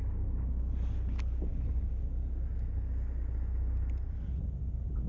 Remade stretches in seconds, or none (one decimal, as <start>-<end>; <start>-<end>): none